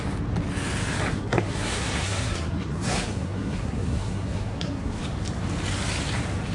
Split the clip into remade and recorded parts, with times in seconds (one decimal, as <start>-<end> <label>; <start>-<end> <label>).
0.0-1.1 recorded; 1.1-5.0 remade; 5.0-6.5 recorded